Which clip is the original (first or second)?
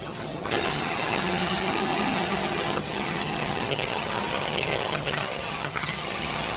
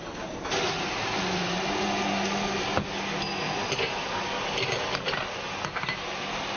second